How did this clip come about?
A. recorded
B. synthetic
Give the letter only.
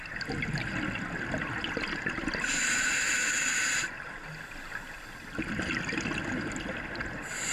A